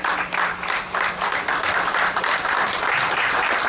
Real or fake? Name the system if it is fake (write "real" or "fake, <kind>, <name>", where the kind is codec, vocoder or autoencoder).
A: fake, vocoder, BigVGAN v2